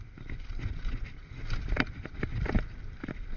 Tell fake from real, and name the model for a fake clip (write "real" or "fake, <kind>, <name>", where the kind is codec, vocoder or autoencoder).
real